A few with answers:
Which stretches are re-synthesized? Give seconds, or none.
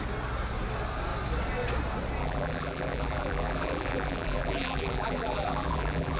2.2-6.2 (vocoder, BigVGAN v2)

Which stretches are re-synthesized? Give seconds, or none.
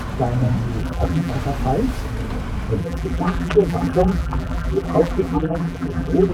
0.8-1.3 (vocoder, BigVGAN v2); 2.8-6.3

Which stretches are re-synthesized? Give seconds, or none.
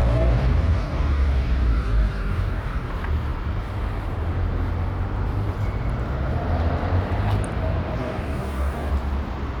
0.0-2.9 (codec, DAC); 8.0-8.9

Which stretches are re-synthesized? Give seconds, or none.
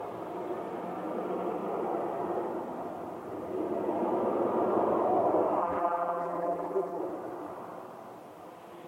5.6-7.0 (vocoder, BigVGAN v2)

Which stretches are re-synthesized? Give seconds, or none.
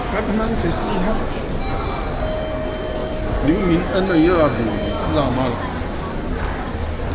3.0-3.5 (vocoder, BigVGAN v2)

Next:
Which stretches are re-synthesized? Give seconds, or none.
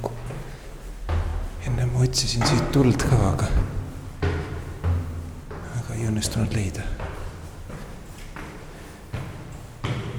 5.6-10.2 (vocoder, BigVGAN v2)